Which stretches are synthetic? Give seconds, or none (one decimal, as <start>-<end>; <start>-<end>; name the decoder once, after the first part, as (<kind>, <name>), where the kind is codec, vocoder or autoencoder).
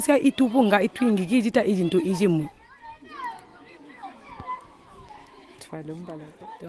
3.5-5.6 (autoencoder, DAC-VAE)